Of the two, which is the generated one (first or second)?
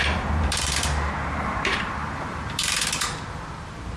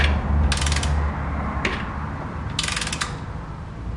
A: first